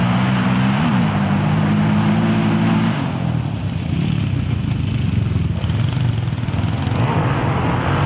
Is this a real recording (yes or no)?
yes